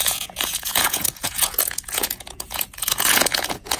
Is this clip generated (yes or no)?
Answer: yes